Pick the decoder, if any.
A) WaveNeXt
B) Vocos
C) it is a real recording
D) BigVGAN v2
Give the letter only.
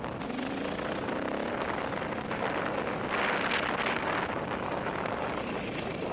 C